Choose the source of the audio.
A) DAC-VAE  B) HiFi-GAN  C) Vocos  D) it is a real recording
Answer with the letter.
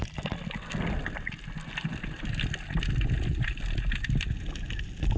D